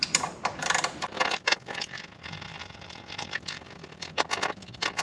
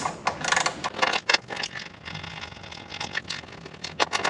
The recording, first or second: second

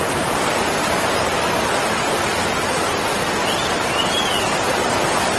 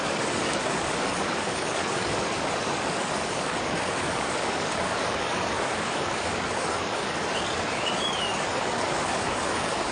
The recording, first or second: first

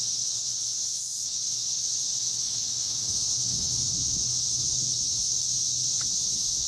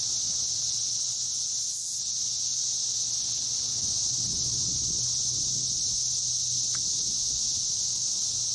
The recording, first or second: second